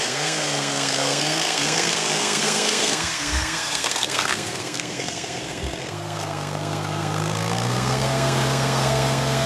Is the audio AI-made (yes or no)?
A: yes